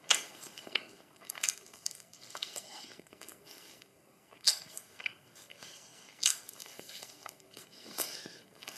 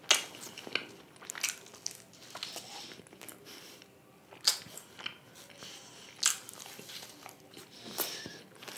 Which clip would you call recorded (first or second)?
second